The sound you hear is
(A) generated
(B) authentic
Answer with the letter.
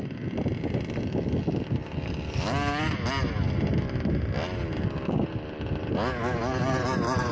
B